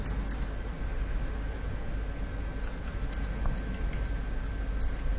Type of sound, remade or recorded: recorded